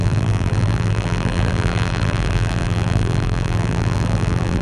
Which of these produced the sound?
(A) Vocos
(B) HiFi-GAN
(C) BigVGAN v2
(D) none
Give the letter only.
C